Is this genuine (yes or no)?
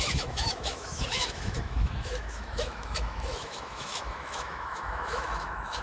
no